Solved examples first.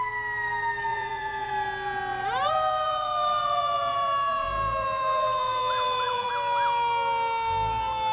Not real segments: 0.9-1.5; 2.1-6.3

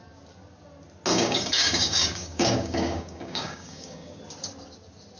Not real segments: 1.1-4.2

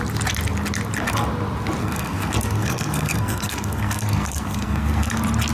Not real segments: 1.8-5.1

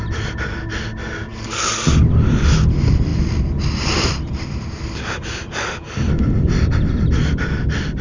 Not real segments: none

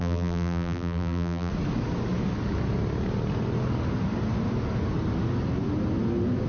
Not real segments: 0.0-1.5

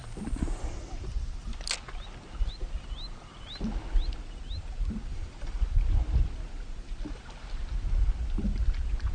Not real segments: 5.1-5.6